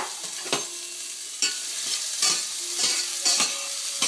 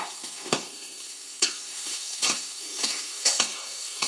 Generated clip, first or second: second